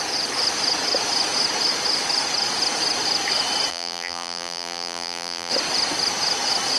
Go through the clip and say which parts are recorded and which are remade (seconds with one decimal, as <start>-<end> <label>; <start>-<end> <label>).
0.0-3.7 recorded; 3.7-5.5 remade; 5.5-6.8 recorded

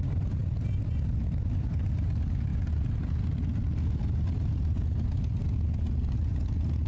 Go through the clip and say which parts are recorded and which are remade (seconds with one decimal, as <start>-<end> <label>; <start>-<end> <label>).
0.0-6.9 recorded

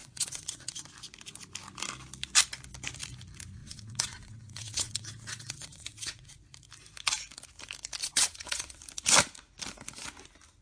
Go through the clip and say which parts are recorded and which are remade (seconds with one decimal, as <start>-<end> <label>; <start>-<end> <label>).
0.0-0.8 remade; 0.8-3.6 recorded; 3.6-6.4 remade; 6.4-8.0 recorded; 8.0-8.8 remade; 8.8-10.6 recorded